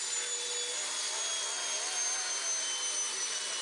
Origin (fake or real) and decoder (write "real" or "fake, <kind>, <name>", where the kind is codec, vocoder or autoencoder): real